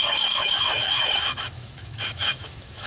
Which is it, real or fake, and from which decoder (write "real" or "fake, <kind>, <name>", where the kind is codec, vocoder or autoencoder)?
fake, autoencoder, DAC-VAE